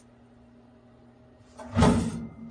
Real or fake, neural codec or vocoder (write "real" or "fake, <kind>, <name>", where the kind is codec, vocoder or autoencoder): real